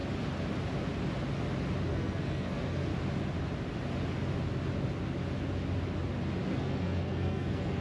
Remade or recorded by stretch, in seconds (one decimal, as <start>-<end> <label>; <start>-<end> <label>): 0.0-1.9 recorded; 1.9-2.9 remade; 2.9-6.5 recorded; 6.5-7.8 remade